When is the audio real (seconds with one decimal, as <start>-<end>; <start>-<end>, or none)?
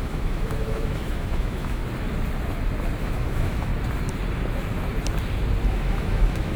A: 1.8-3.0; 3.7-5.7